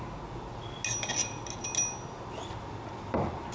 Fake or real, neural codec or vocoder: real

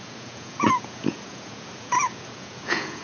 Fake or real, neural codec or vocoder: fake, vocoder, Vocos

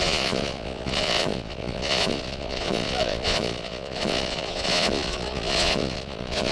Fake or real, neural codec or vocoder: fake, vocoder, Vocos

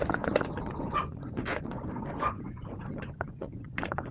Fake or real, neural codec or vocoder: fake, vocoder, Vocos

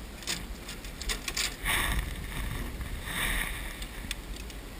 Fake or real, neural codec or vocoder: real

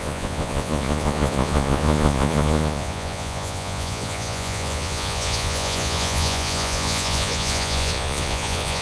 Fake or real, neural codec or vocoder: fake, vocoder, Vocos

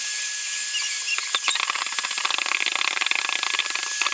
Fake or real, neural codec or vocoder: real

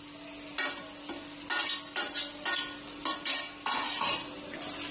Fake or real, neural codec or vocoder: real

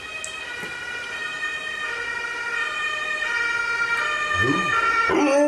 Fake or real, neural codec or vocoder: real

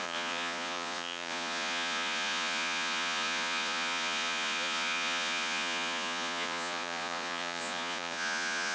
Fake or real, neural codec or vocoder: fake, vocoder, Vocos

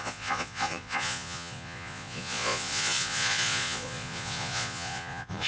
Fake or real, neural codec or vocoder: fake, vocoder, Vocos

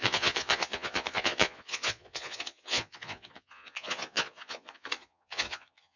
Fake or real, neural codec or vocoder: fake, vocoder, Vocos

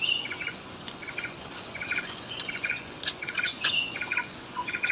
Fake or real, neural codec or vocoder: fake, vocoder, Vocos